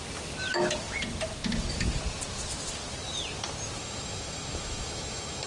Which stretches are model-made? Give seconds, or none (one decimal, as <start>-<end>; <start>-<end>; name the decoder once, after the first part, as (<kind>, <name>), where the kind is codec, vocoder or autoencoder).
3.8-5.5 (autoencoder, DAC-VAE)